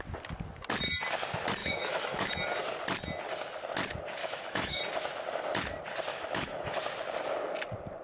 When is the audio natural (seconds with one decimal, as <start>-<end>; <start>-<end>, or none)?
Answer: 0.0-1.6; 2.3-4.2; 4.8-6.1; 6.7-8.0